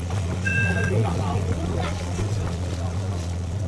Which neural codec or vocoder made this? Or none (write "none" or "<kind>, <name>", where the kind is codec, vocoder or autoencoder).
vocoder, Vocos